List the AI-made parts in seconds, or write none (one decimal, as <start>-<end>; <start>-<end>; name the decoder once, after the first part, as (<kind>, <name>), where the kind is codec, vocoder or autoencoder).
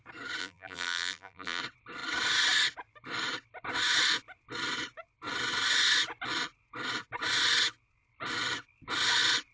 0.4-1.6 (vocoder, BigVGAN v2)